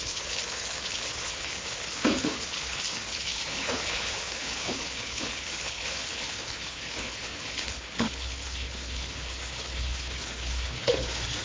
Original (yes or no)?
no